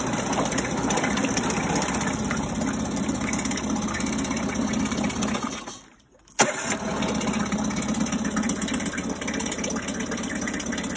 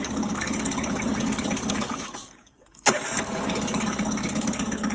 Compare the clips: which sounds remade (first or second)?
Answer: second